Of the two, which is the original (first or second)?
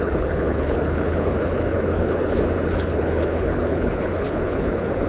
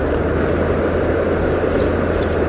second